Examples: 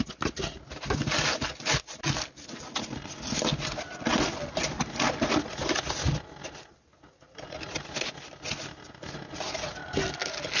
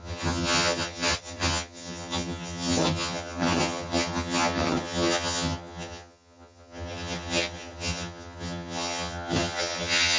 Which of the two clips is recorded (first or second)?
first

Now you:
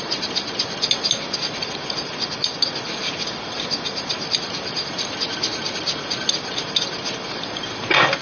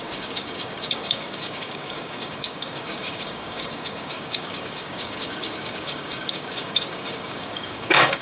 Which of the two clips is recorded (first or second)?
first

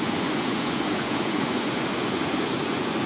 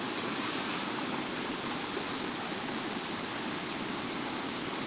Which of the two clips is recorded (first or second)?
second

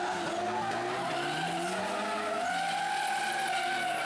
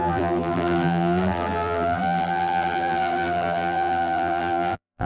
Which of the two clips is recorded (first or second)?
first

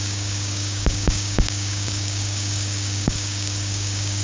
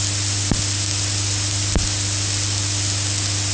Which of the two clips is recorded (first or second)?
second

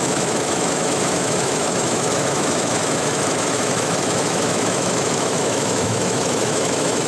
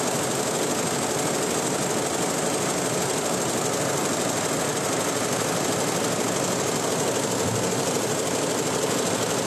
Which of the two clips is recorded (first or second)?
second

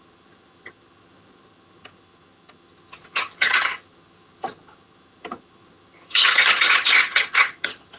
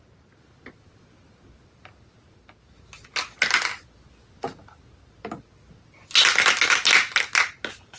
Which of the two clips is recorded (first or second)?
second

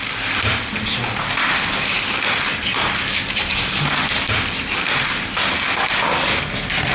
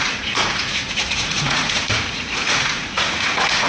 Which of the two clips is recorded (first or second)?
first